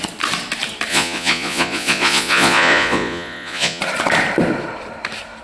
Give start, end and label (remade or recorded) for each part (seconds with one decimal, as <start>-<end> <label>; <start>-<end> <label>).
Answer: 0.0-0.9 recorded; 0.9-3.8 remade; 3.8-5.4 recorded